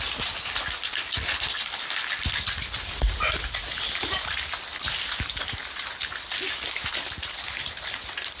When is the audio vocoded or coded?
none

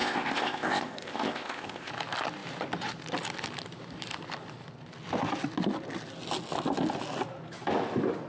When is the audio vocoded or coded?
0.0-1.9 (codec, ZipCodec)

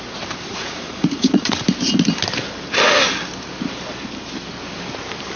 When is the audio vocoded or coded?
0.5-1.6 (vocoder, Vocos)

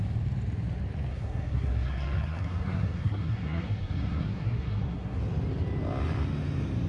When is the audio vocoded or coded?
1.1-5.2 (codec, SNAC)

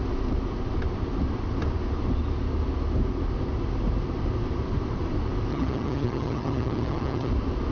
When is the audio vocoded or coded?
5.5-7.3 (vocoder, HiFi-GAN)

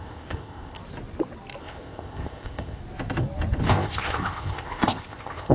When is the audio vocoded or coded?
0.0-0.8 (codec, ZipCodec); 1.6-2.8; 3.7-5.5

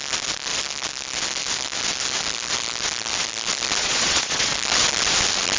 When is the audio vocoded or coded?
3.8-4.5 (vocoder, Vocos)

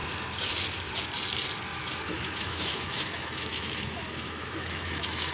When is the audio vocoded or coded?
1.7-5.3 (autoencoder, DAC-VAE)